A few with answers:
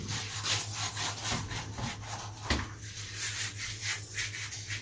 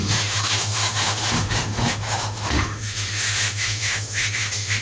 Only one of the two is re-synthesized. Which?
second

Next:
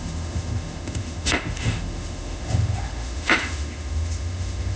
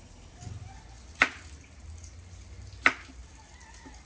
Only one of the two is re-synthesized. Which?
first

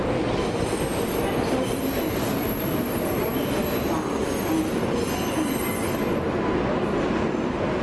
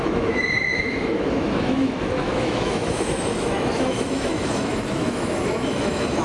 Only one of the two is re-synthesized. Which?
second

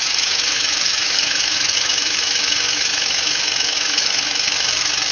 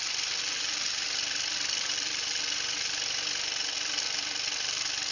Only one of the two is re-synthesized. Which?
first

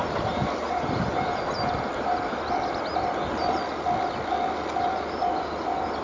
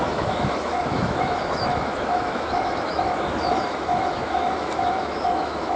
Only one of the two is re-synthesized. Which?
second